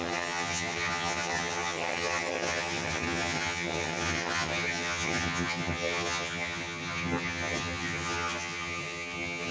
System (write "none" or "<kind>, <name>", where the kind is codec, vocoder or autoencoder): vocoder, HiFi-GAN